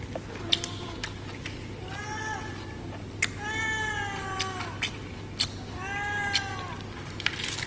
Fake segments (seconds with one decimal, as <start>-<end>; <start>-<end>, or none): none